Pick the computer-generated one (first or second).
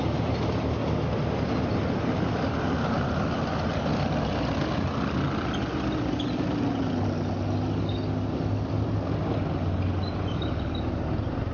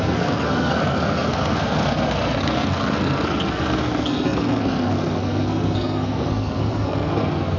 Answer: second